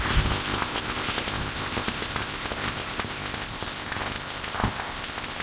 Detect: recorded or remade remade